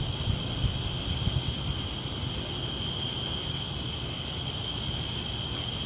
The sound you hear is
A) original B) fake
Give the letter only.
A